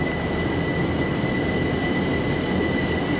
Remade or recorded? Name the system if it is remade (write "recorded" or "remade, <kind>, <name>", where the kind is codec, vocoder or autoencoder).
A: recorded